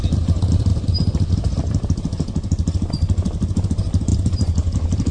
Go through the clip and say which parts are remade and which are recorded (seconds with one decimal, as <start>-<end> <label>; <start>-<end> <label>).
0.0-4.1 recorded; 4.1-5.1 remade